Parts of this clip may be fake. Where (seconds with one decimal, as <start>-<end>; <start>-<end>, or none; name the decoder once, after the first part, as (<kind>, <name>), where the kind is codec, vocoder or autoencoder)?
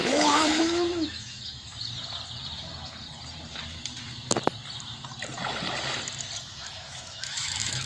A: 0.0-1.7 (autoencoder, DAC-VAE); 6.4-7.9